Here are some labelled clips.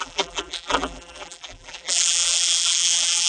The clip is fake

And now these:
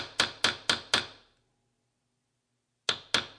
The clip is real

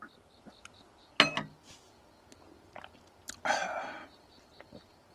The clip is real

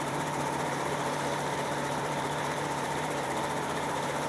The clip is fake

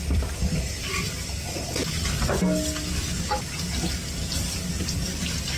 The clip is real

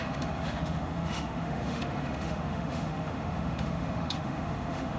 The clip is fake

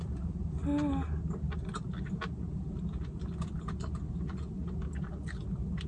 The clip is real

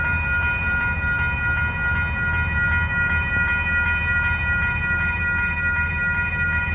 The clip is real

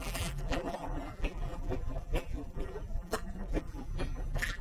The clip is fake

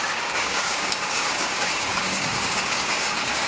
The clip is fake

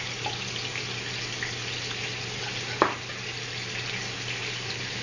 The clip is real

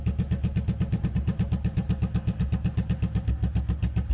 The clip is real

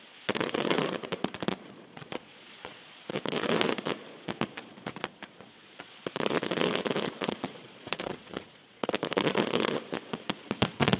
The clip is fake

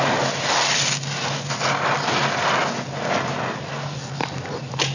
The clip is real